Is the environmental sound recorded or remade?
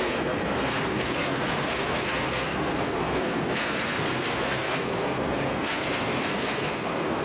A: remade